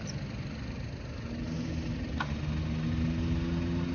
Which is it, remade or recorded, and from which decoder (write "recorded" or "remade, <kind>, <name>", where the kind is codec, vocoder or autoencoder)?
recorded